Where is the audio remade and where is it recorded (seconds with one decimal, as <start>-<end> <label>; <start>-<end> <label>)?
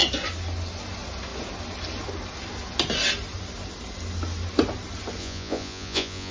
0.0-5.2 recorded; 5.2-6.3 remade